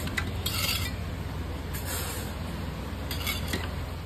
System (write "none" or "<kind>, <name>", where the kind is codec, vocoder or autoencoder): none